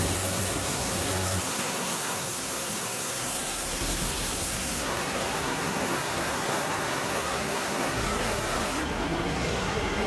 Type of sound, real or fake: fake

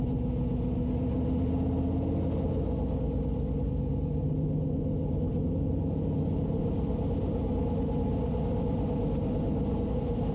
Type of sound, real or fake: real